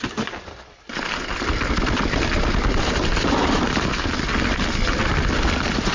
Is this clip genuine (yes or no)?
yes